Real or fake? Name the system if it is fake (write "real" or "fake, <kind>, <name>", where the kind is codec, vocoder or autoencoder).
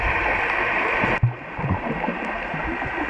real